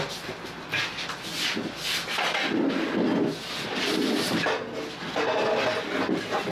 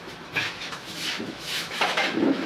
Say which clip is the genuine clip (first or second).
first